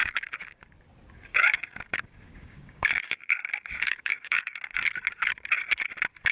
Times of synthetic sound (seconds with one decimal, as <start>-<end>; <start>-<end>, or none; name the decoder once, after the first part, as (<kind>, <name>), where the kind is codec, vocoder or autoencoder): 0.0-0.6 (codec, DAC); 1.3-4.4